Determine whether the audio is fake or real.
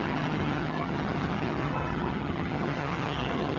fake